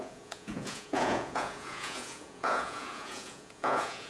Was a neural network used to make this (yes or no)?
yes